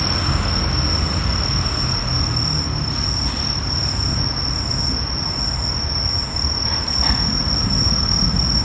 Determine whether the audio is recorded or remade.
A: recorded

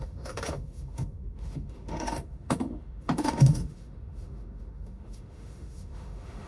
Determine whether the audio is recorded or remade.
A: remade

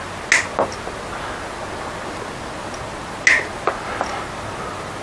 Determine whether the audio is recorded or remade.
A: recorded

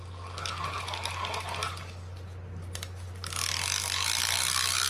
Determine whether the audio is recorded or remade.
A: recorded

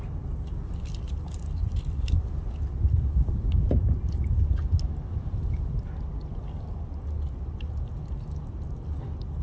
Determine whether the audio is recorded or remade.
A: recorded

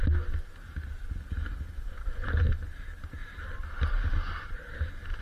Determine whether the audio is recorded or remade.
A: recorded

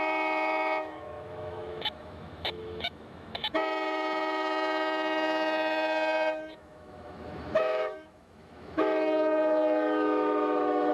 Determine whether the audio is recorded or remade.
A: remade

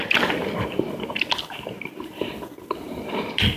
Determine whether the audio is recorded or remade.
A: recorded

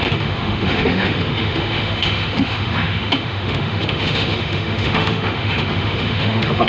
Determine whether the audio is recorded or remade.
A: remade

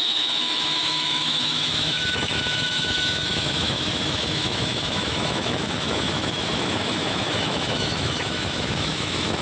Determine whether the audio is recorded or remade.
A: remade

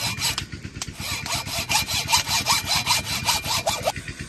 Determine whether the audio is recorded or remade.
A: recorded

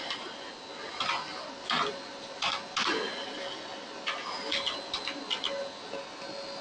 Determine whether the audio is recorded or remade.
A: recorded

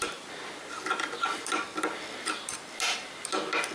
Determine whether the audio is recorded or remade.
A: recorded